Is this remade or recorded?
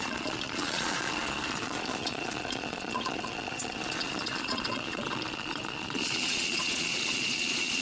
remade